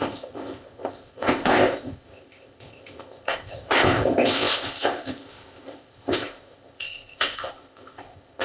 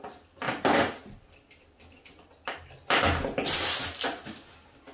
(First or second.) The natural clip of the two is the second